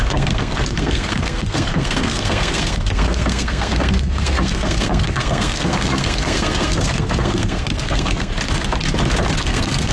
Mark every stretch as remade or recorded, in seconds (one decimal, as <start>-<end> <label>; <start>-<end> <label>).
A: 0.0-8.3 remade; 8.3-9.4 recorded; 9.4-9.9 remade

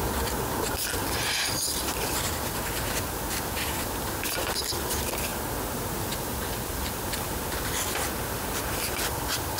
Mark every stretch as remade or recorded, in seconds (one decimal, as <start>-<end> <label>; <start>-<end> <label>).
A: 0.0-5.3 remade; 5.3-6.2 recorded; 6.2-9.6 remade